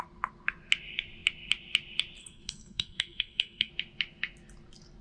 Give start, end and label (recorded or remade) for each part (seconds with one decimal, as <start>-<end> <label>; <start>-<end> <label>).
0.0-2.2 recorded; 2.2-3.7 remade; 3.7-5.0 recorded